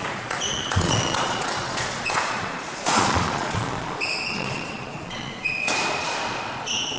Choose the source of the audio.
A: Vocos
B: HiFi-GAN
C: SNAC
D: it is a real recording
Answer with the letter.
A